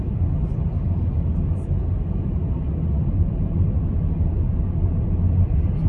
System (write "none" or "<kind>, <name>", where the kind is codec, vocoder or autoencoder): none